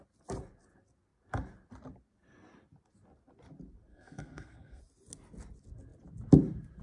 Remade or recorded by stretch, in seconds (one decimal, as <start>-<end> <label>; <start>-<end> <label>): 0.0-3.9 recorded; 3.9-4.8 remade; 4.8-6.8 recorded